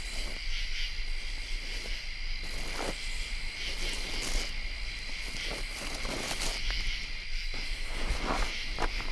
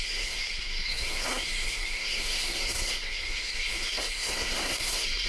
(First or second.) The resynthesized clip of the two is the second